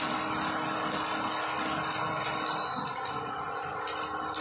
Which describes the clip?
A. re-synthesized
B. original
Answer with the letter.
B